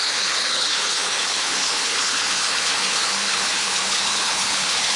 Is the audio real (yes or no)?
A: no